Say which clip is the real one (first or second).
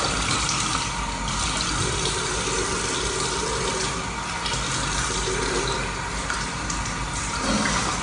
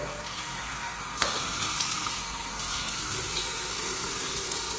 first